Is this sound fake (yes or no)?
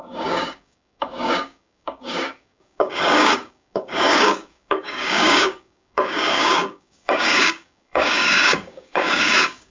yes